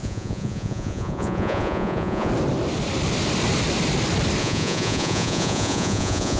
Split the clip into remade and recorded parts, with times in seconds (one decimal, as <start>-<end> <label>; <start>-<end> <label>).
0.0-2.3 remade; 2.3-4.4 recorded; 4.4-6.4 remade